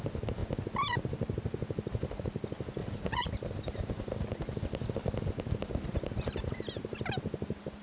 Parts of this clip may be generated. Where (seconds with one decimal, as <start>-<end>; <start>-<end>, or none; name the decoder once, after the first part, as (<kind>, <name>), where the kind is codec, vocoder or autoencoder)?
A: 2.8-3.3 (vocoder, Vocos)